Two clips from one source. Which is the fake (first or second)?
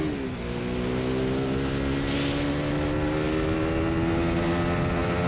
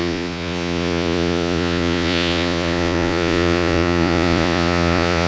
second